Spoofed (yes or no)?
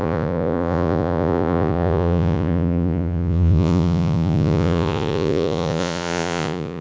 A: yes